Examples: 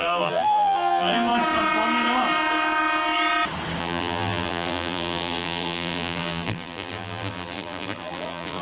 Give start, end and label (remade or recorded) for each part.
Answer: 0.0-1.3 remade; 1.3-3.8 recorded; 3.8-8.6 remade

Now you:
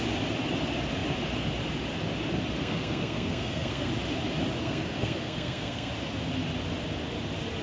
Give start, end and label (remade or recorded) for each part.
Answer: 0.0-2.6 recorded; 2.6-3.9 remade; 3.9-4.6 recorded; 4.6-5.9 remade; 5.9-7.6 recorded

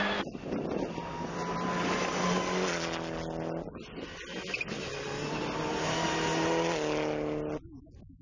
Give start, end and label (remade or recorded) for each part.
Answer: 0.0-8.2 recorded

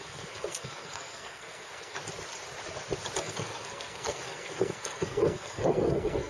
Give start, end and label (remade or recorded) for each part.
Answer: 0.0-2.0 remade; 2.0-3.2 recorded; 3.2-6.3 remade

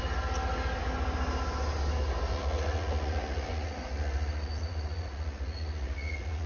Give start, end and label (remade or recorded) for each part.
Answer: 0.0-2.3 recorded; 2.3-6.5 remade

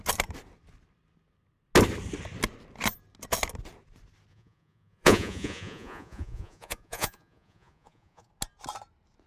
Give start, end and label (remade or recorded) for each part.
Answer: 0.0-4.3 recorded; 4.3-8.3 remade; 8.3-9.3 recorded

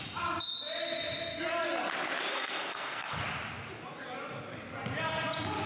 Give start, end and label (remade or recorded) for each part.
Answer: 0.0-2.3 recorded; 2.3-3.2 remade; 3.2-5.7 recorded